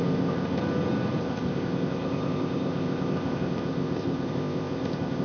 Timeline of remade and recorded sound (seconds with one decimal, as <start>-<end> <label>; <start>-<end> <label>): 0.0-0.6 remade; 0.6-1.2 recorded; 1.2-5.2 remade